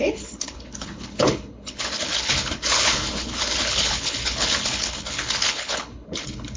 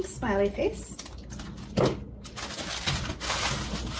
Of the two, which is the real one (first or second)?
second